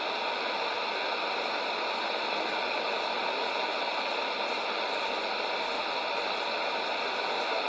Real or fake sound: real